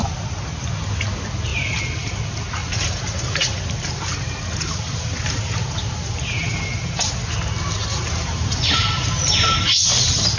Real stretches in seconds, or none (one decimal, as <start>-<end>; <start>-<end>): 0.0-1.5; 2.2-2.6; 7.1-7.9; 9.7-10.4